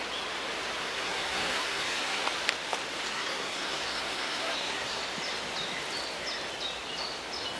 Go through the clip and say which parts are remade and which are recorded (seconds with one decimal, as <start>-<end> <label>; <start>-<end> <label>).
0.0-0.8 recorded; 0.8-2.2 remade; 2.2-3.1 recorded; 3.1-5.0 remade; 5.0-7.6 recorded